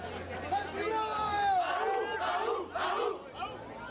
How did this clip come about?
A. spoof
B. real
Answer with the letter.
B